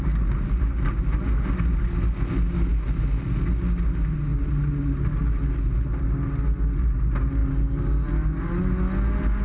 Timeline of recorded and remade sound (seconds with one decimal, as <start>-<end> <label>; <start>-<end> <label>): 0.0-9.4 recorded